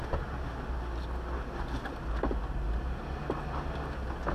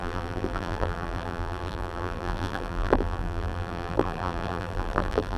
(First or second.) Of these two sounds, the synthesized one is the second